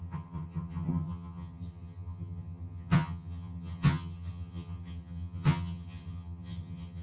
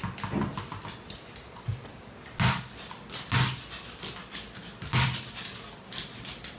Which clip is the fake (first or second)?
first